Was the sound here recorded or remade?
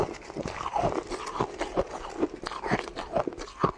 recorded